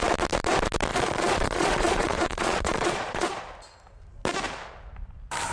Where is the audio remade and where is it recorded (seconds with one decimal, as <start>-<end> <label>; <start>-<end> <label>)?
0.0-0.9 recorded; 0.9-3.4 remade; 3.4-5.5 recorded